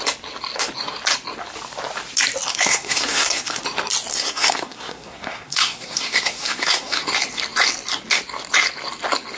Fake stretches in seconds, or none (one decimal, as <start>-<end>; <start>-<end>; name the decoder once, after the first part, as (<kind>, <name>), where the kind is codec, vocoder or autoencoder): 2.5-3.6 (codec, SNAC); 4.1-7.0

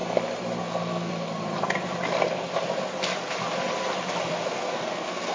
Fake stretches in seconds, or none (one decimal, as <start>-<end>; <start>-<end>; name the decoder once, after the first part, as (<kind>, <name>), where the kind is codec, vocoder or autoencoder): 0.6-1.1 (codec, SNAC); 4.3-5.3

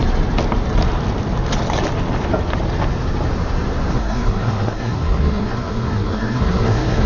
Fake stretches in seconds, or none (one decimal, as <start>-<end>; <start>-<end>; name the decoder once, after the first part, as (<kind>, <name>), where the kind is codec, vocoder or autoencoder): 3.9-7.1 (codec, SNAC)

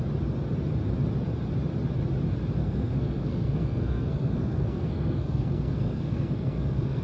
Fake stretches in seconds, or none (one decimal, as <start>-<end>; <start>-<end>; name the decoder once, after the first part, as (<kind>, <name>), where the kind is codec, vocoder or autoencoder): 2.6-7.0 (codec, SNAC)

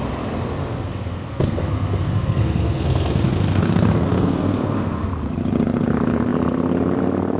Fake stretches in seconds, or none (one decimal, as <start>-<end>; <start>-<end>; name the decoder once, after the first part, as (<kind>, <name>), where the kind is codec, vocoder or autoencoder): 0.7-5.1 (codec, SNAC)

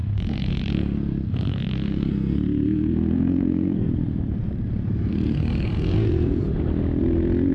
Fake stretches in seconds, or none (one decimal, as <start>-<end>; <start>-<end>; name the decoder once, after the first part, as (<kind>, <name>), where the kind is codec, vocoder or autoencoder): 0.0-3.9 (codec, SNAC); 5.1-6.4

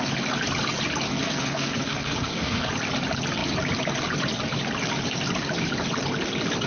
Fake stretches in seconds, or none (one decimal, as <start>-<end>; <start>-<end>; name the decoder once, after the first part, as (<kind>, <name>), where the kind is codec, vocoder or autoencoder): 1.1-2.7 (codec, SNAC)

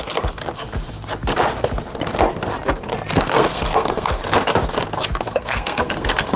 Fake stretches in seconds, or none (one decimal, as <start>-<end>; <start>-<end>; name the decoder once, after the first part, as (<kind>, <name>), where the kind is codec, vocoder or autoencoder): 0.0-0.4 (codec, SNAC); 3.3-4.2; 5.3-6.4